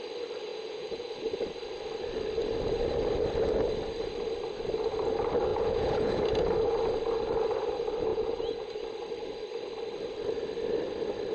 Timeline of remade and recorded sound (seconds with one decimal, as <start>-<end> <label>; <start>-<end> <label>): 0.0-0.5 recorded; 0.5-1.1 remade; 1.1-5.5 recorded; 5.5-6.2 remade; 6.2-8.1 recorded; 8.1-8.7 remade; 8.7-11.3 recorded